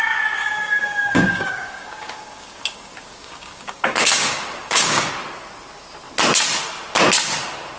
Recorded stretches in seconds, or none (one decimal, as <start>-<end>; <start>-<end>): 0.0-0.4; 5.1-7.8